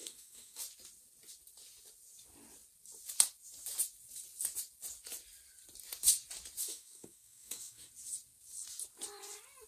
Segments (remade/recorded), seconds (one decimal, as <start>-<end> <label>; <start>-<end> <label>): 0.0-0.6 remade; 0.6-6.6 recorded; 6.6-7.9 remade; 7.9-9.7 recorded